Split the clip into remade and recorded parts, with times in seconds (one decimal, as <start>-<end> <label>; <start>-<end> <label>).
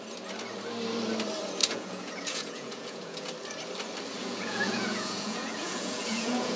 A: 0.0-1.6 recorded; 1.6-3.3 remade; 3.3-4.2 recorded; 4.2-6.6 remade